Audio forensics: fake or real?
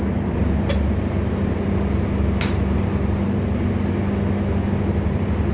real